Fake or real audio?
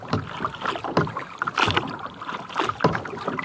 fake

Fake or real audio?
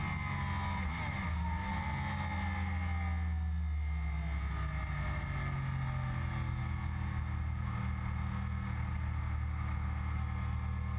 real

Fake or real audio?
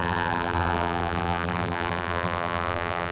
fake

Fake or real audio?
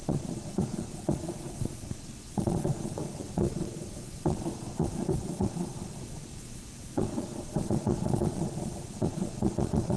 fake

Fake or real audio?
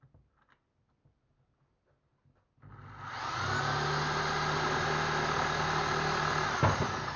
real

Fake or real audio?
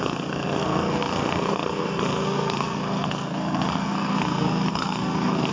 fake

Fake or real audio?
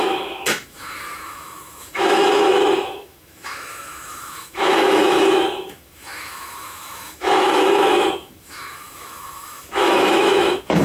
fake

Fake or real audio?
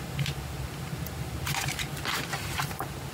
real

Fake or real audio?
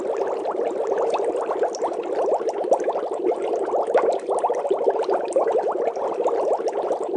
real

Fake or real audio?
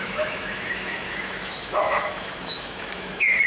fake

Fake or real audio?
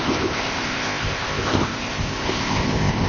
fake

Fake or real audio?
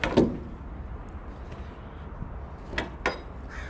real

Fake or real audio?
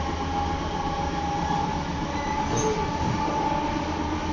real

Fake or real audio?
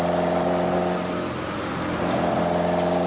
real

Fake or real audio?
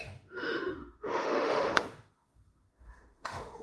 fake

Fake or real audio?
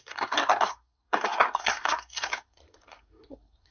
fake